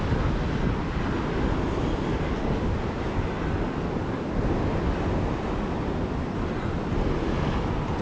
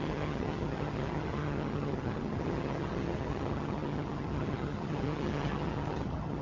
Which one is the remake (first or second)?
second